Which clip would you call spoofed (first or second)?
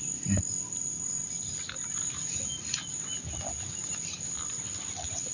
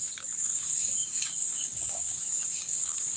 second